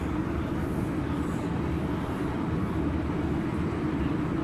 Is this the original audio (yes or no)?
yes